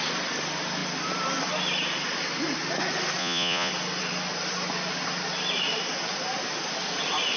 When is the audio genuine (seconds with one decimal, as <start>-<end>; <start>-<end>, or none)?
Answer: 0.0-3.2; 3.7-7.4